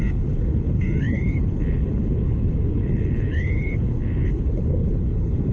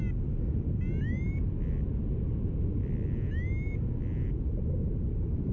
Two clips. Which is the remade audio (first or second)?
first